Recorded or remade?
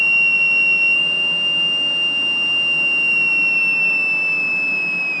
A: recorded